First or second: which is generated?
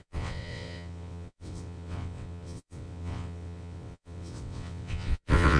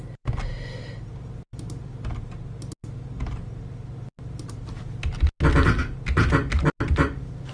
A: first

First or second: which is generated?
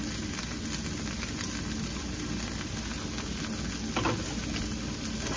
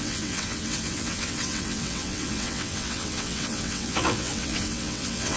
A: second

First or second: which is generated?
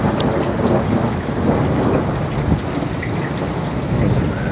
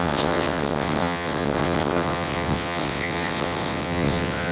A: second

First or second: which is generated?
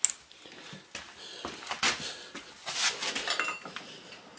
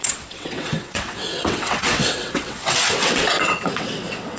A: second